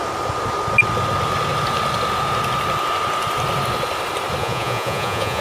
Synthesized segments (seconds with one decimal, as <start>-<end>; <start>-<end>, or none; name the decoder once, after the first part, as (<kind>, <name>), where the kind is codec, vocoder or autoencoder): 4.4-5.4 (vocoder, Vocos)